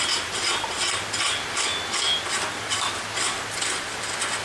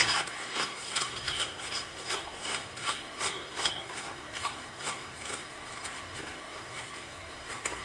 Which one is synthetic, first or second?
second